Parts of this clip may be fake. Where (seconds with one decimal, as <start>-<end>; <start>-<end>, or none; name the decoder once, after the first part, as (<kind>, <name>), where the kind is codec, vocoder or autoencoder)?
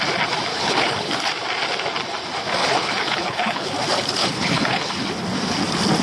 0.5-1.3 (codec, HILCodec); 2.6-3.7; 4.2-4.9